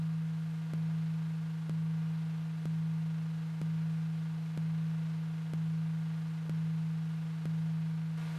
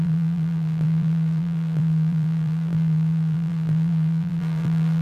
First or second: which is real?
first